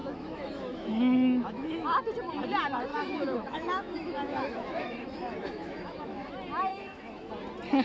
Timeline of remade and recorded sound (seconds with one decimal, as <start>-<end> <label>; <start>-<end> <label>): 0.0-2.0 remade; 2.0-2.9 recorded; 2.9-6.3 remade; 6.3-6.7 recorded; 6.7-7.3 remade; 7.3-7.8 recorded